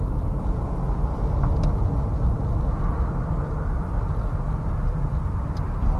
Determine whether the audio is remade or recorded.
recorded